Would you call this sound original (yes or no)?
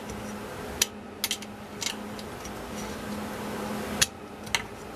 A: yes